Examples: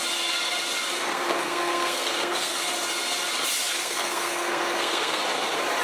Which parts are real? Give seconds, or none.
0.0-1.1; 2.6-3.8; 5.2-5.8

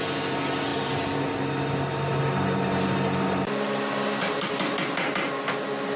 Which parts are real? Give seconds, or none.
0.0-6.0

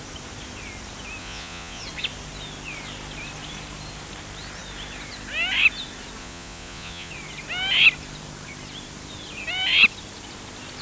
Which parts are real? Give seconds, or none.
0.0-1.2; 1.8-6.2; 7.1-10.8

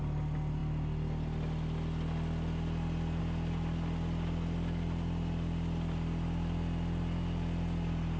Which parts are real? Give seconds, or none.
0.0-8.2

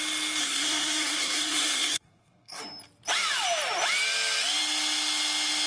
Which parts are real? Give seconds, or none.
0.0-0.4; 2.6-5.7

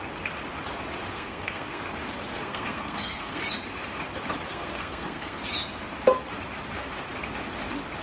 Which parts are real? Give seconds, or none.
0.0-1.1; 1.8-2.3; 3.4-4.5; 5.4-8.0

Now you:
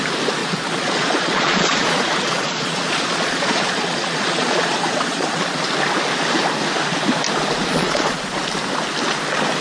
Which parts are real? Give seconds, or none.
0.0-0.4; 5.4-7.7; 8.2-9.6